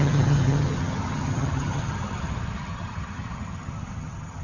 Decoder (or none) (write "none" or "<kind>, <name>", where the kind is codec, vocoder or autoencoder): vocoder, HiFi-GAN